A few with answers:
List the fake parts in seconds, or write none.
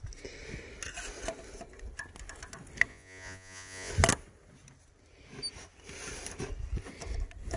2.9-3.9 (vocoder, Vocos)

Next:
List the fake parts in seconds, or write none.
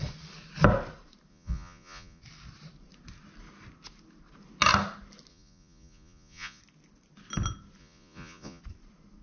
1.3-2.2 (vocoder, Vocos); 5.3-6.6; 7.8-8.6